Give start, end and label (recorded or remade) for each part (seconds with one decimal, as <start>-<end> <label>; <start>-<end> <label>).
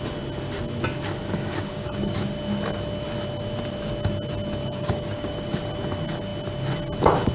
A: 0.0-1.7 recorded; 1.7-2.4 remade; 2.4-4.6 recorded; 4.6-5.5 remade; 5.5-7.3 recorded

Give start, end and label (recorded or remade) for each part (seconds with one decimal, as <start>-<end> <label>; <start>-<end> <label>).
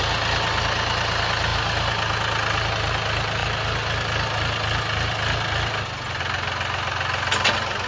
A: 0.0-7.9 recorded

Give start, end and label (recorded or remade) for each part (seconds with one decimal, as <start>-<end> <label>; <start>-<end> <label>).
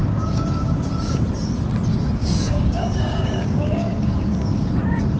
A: 0.0-0.9 remade; 0.9-2.2 recorded; 2.2-4.7 remade; 4.7-5.2 recorded